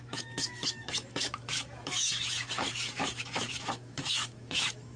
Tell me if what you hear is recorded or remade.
remade